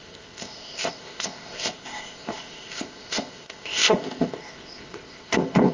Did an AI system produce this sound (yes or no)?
yes